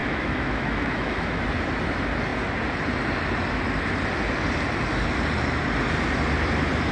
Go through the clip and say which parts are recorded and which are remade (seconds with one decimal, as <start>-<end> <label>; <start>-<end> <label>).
0.0-1.4 remade; 1.4-6.9 recorded